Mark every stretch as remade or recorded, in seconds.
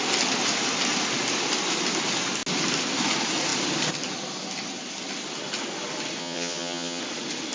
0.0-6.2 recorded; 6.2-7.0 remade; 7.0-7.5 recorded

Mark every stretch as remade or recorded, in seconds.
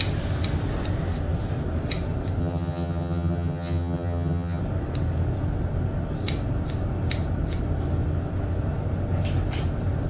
0.0-2.4 recorded; 2.4-4.6 remade; 4.6-10.1 recorded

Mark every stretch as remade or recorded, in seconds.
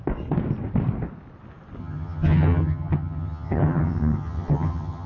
0.0-1.8 recorded; 1.8-5.1 remade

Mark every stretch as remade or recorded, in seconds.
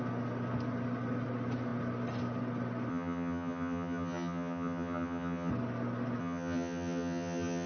0.0-2.9 recorded; 2.9-5.5 remade; 5.5-6.2 recorded; 6.2-7.7 remade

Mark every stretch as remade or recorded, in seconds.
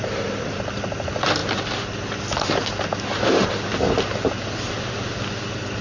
0.0-5.8 recorded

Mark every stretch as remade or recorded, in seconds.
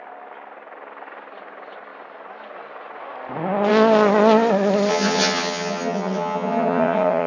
0.0-4.9 recorded; 4.9-7.3 remade